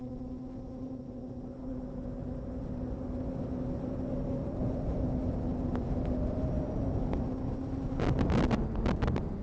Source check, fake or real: real